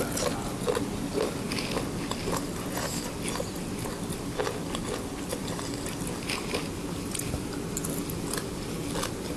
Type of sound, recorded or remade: recorded